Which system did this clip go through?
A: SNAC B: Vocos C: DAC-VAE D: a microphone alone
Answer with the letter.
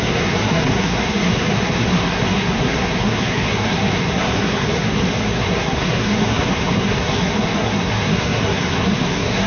A